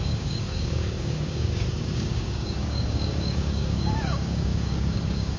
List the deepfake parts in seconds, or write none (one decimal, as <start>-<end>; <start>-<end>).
0.0-5.4